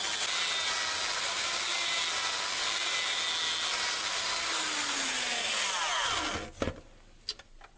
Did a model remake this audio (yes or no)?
no